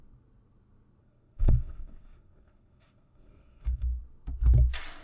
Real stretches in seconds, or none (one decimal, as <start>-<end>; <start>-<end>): 0.0-1.0; 4.0-5.0